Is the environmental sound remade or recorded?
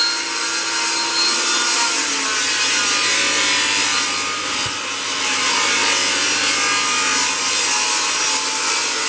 recorded